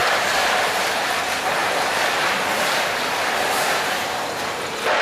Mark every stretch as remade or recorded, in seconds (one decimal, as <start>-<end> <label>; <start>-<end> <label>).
0.0-1.0 remade; 1.0-1.6 recorded; 1.6-4.6 remade; 4.6-5.0 recorded